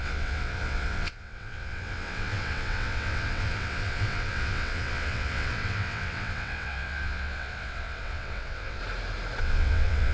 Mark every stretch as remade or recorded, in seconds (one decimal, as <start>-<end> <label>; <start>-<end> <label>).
0.0-8.8 remade; 8.8-9.4 recorded; 9.4-10.1 remade